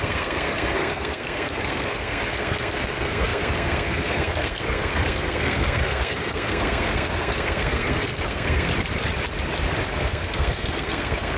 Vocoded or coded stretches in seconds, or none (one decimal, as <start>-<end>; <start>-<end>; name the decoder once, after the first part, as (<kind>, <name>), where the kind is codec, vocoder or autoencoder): 0.0-8.7 (codec, SNAC); 9.9-11.4

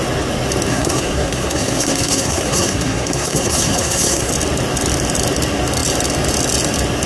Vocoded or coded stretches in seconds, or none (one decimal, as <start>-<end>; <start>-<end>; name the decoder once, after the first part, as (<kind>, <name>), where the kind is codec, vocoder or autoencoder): 0.7-4.3 (codec, SNAC)

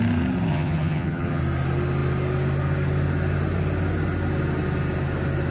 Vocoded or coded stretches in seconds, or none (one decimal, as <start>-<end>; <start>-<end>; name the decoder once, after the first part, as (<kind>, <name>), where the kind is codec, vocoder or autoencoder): 0.5-1.4 (vocoder, HiFi-GAN)

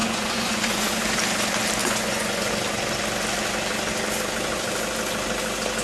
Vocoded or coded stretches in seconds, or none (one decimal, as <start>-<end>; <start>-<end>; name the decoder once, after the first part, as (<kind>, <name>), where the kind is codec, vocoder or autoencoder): 0.0-0.9 (vocoder, Vocos); 1.8-2.5

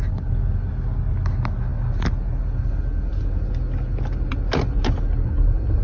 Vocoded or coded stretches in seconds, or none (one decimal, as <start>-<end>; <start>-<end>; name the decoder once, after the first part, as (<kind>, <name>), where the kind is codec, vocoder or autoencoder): none

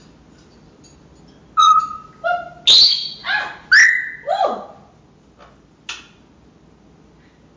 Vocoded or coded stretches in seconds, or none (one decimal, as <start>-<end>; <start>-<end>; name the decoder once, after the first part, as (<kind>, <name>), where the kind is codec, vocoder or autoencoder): 1.6-2.1 (vocoder, Vocos)

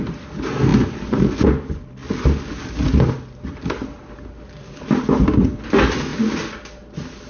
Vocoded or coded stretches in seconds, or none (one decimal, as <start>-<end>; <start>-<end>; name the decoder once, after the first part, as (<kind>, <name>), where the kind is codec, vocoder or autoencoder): 0.7-1.5 (vocoder, BigVGAN v2)

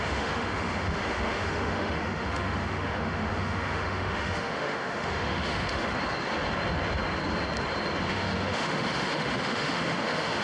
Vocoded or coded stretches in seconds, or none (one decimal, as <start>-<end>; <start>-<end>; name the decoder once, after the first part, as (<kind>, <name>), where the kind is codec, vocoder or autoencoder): 0.0-5.9 (autoencoder, DAC-VAE); 8.1-10.4